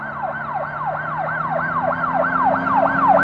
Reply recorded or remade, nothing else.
recorded